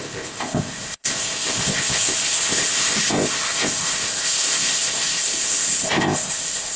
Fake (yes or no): yes